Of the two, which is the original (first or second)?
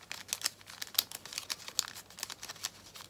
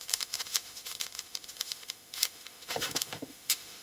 first